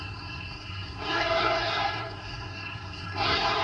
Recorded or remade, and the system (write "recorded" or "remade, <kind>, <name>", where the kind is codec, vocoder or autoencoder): remade, codec, SNAC